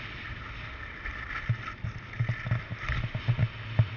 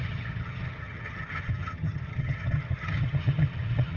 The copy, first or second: second